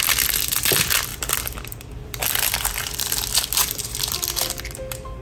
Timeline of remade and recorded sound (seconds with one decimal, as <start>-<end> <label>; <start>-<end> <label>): 0.0-1.1 recorded; 1.1-4.2 remade; 4.2-5.2 recorded